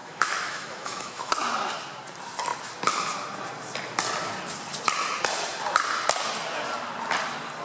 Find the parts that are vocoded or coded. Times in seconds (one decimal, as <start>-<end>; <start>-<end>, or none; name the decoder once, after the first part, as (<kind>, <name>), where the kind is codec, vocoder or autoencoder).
0.0-1.3 (autoencoder, DAC-VAE)